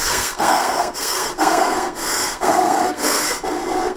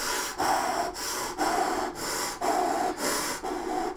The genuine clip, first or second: second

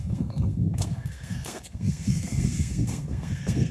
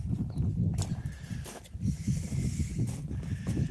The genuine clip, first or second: second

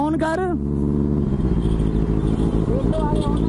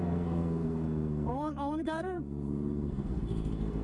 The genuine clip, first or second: first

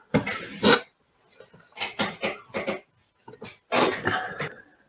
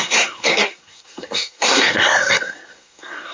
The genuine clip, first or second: first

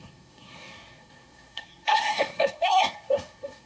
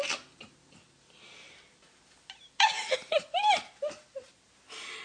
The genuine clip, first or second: second